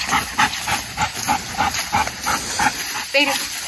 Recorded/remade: recorded